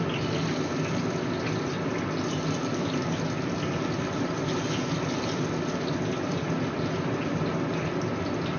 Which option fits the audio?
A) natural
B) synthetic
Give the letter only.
A